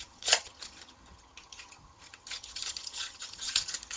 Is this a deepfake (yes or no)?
yes